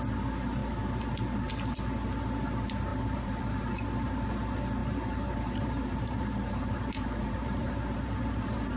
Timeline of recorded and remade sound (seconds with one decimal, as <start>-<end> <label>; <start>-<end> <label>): 0.0-2.9 recorded; 2.9-3.6 remade; 3.6-4.8 recorded; 4.8-8.8 remade